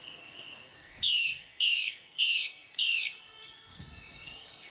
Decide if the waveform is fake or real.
fake